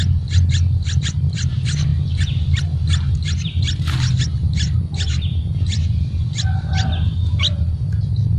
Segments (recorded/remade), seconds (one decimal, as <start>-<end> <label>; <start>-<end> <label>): 0.0-8.4 recorded